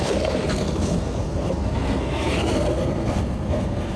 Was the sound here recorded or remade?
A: remade